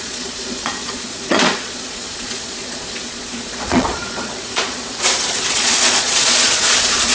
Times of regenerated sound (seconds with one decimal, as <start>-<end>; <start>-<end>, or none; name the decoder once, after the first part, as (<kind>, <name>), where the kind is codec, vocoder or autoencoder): 0.0-4.8 (vocoder, Vocos); 5.5-7.1